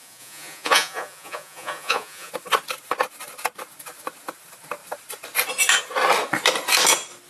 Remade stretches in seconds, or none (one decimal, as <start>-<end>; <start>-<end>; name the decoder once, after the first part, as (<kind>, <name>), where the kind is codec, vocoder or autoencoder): 0.0-2.3 (vocoder, Vocos)